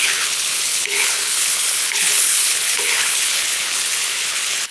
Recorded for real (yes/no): no